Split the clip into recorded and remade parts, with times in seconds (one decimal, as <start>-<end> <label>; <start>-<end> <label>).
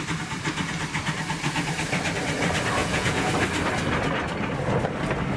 0.0-2.8 recorded; 2.8-3.3 remade; 3.3-5.4 recorded